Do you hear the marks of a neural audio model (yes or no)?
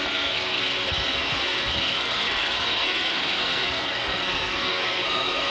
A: yes